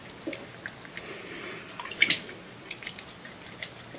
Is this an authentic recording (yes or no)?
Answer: yes